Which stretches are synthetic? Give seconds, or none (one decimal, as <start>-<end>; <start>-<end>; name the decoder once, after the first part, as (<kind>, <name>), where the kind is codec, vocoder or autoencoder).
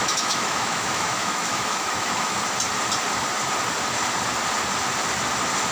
0.0-2.4 (autoencoder, DAC-VAE)